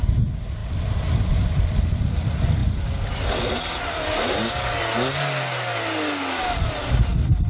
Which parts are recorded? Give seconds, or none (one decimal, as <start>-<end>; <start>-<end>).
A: 0.0-7.5